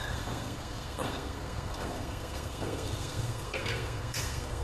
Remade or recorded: remade